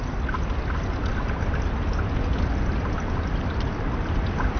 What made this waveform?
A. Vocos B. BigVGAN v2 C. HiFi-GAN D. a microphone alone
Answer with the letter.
D